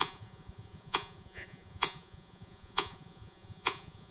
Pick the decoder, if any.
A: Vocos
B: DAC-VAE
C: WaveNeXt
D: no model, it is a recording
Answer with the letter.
A